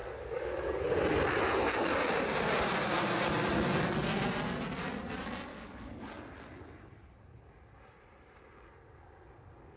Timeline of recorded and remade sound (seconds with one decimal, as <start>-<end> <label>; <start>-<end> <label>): 0.0-0.8 remade; 0.8-5.5 recorded; 5.5-6.1 remade; 6.1-9.8 recorded